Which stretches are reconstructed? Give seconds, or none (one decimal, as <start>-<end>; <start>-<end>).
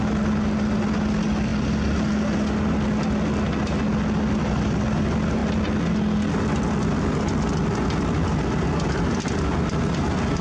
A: none